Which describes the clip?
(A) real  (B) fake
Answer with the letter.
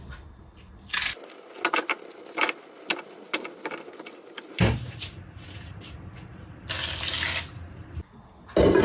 A